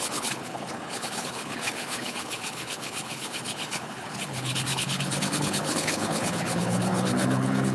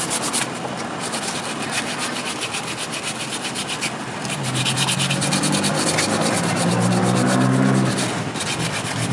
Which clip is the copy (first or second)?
first